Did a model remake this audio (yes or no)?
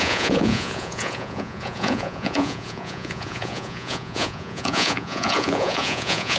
yes